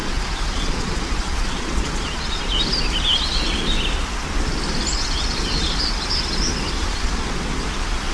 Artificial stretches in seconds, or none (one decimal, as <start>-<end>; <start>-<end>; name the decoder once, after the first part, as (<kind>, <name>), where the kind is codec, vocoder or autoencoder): 0.0-2.6 (vocoder, Vocos); 6.8-7.3